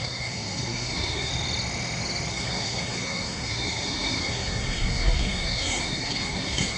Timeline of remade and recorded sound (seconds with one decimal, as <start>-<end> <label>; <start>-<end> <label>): 0.0-1.3 remade; 1.3-2.3 recorded; 2.3-6.8 remade